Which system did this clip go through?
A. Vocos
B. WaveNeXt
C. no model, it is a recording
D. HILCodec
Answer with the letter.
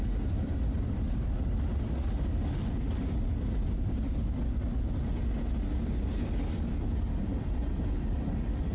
C